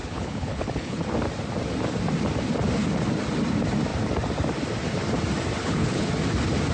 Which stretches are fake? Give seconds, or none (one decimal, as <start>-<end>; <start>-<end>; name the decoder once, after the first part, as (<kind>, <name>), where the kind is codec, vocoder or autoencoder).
0.0-1.0 (codec, HILCodec); 5.6-6.1

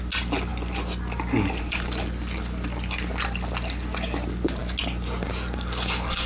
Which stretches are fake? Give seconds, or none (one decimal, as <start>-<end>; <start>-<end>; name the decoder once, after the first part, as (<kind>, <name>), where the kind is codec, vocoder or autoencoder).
none

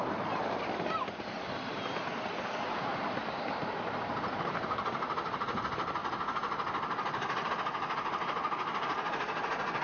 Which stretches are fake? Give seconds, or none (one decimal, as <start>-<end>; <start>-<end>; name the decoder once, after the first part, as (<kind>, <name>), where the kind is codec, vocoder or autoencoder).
none

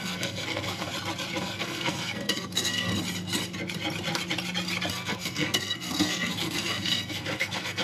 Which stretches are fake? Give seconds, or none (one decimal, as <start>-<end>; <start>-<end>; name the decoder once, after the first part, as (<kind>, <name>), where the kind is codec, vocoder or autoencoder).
0.0-0.9 (codec, SNAC); 1.4-2.9; 4.9-7.8

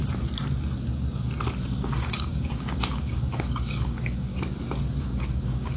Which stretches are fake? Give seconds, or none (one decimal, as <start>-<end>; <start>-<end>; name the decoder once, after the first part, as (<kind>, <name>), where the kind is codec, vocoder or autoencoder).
1.6-4.3 (codec, DAC); 5.0-5.8

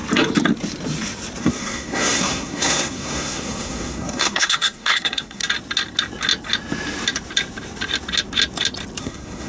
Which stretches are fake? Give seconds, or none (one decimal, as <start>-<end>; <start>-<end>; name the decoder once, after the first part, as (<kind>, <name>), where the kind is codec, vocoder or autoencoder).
1.4-5.4 (codec, SNAC); 9.0-9.5

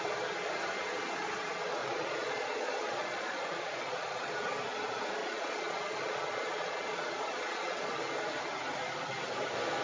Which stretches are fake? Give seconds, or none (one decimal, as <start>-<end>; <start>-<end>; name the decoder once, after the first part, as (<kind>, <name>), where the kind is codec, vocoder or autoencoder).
1.8-4.3 (vocoder, Vocos); 5.2-7.8